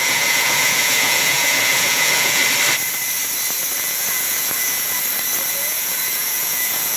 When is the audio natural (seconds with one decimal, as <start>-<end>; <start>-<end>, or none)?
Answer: 2.4-3.8; 5.0-5.5